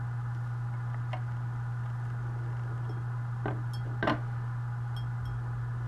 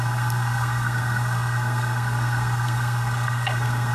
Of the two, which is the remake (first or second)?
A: second